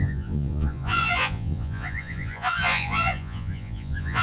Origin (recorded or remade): remade